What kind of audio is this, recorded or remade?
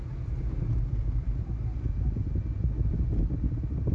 recorded